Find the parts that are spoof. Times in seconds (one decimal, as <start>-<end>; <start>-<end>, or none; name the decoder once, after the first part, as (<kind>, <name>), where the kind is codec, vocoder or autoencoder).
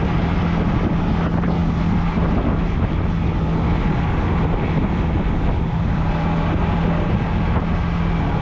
none